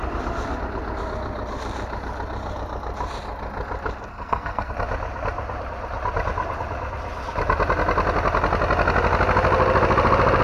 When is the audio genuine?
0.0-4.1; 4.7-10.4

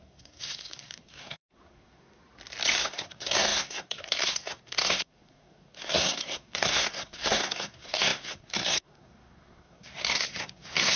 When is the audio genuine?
2.2-2.8

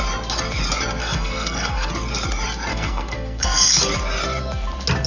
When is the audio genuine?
0.0-1.0; 1.9-2.7; 3.8-5.1

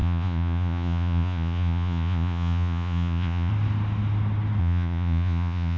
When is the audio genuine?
3.5-4.6

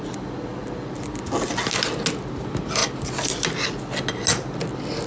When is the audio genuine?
0.0-5.1

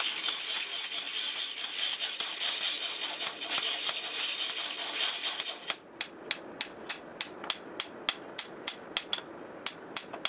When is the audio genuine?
0.0-10.3

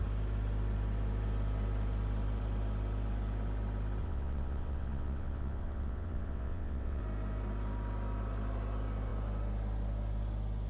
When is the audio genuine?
0.0-4.0; 7.0-10.7